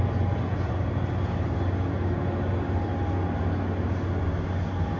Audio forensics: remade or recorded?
recorded